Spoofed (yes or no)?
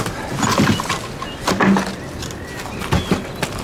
no